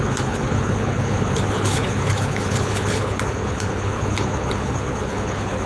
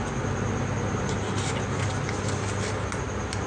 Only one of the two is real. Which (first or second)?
second